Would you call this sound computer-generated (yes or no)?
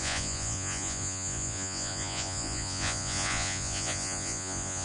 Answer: yes